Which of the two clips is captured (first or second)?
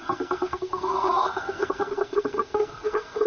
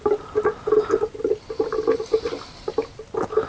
second